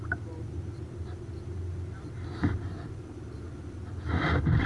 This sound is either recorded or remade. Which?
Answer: recorded